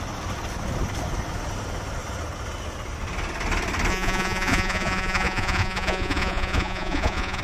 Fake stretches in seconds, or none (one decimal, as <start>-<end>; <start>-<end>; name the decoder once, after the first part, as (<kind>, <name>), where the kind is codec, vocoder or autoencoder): 3.9-7.4 (vocoder, Vocos)